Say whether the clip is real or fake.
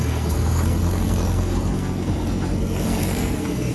fake